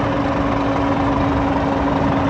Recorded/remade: recorded